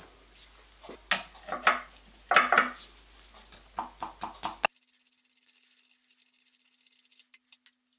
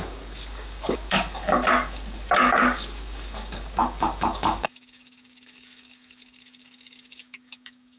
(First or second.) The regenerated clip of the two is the second